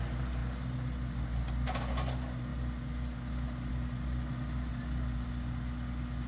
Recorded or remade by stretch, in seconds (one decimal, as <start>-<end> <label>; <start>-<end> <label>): 0.0-6.3 recorded